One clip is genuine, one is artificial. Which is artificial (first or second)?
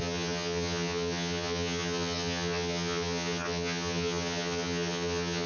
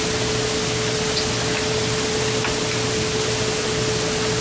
first